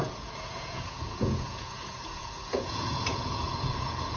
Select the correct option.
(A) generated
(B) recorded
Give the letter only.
A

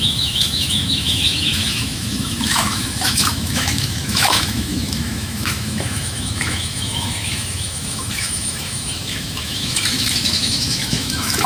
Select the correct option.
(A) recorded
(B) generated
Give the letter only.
B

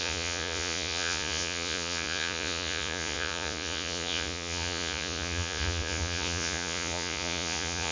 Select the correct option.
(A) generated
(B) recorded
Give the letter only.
A